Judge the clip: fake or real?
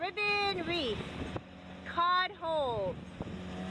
real